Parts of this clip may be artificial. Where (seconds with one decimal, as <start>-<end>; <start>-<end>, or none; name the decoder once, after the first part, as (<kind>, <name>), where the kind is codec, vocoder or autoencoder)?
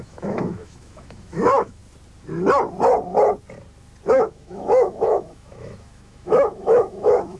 0.0-1.8 (autoencoder, DAC-VAE); 4.1-7.4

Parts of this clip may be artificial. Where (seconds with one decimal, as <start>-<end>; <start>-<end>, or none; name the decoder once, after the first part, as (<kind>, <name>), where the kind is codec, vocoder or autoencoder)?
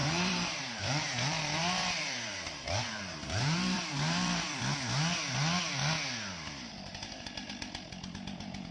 0.0-4.6 (vocoder, BigVGAN v2); 6.9-7.5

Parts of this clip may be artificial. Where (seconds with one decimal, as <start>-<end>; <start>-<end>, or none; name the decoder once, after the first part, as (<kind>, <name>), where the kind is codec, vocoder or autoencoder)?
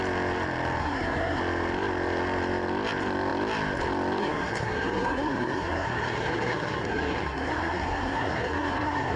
0.8-1.4 (codec, SNAC); 4.2-9.2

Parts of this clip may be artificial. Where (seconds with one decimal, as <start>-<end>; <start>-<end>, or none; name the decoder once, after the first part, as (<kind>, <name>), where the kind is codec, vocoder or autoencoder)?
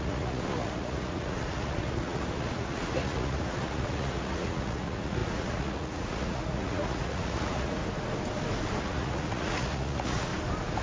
0.0-7.8 (vocoder, Vocos); 8.8-10.3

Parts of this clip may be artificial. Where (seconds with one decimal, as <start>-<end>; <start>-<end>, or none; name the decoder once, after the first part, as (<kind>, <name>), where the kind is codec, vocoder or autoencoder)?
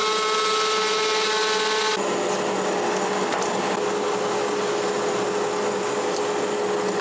none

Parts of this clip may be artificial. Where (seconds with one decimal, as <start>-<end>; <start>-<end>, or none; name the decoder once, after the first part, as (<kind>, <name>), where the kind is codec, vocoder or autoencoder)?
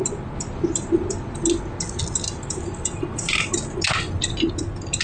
none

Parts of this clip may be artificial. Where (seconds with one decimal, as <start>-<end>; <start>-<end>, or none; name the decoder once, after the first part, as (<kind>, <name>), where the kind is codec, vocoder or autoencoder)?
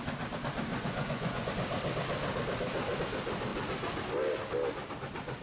0.7-1.5 (vocoder, Vocos)